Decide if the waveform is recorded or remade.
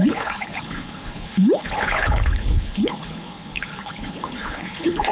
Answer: remade